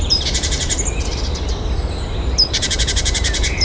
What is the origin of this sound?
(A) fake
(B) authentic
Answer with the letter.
A